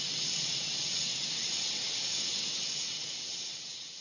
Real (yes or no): no